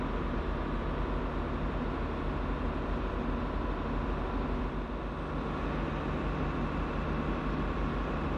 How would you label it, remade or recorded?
recorded